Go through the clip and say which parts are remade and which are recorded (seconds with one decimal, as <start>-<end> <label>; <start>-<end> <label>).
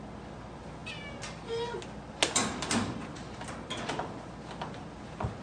0.0-5.4 recorded